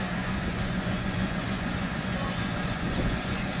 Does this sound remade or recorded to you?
remade